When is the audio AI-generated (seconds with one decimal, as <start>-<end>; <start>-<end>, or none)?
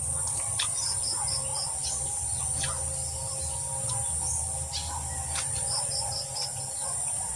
none